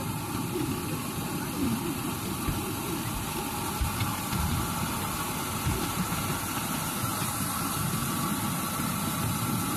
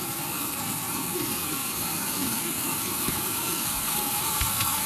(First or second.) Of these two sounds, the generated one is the second